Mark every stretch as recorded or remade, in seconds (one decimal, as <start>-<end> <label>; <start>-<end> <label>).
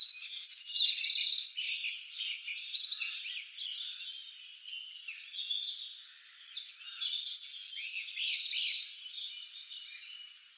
0.0-10.6 recorded